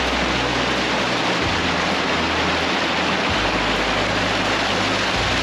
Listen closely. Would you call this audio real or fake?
real